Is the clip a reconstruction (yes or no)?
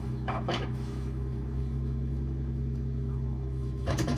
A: yes